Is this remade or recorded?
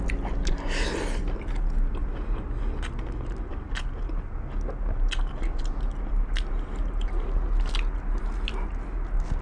recorded